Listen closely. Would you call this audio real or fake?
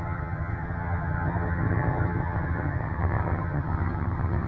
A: fake